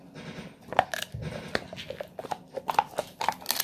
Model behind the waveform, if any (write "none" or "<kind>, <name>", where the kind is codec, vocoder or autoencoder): none